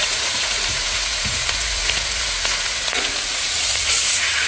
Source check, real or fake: fake